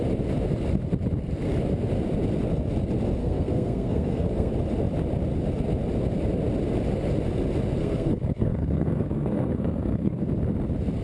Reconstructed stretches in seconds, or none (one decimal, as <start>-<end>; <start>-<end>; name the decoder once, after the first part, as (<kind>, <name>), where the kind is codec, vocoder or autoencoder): 3.2-4.5 (codec, SNAC); 7.8-10.2